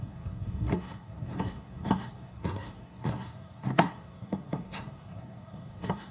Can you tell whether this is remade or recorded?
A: remade